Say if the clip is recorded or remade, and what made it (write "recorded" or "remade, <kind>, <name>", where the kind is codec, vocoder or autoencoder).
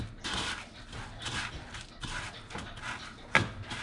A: recorded